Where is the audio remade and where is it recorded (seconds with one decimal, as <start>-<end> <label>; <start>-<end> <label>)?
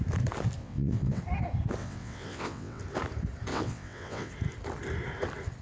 0.0-0.6 recorded; 0.6-1.2 remade; 1.2-1.8 recorded; 1.8-2.8 remade; 2.8-3.5 recorded; 3.5-4.3 remade; 4.3-5.6 recorded